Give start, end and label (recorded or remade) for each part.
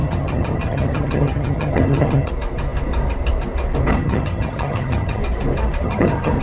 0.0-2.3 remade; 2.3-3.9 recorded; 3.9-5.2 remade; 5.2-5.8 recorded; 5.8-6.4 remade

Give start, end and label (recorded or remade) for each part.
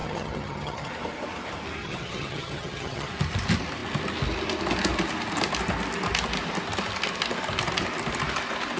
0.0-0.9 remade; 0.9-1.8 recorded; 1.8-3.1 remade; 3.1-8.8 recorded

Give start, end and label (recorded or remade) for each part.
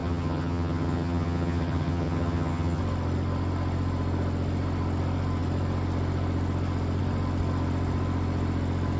0.0-2.8 remade; 2.8-9.0 recorded